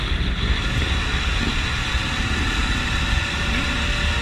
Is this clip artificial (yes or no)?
no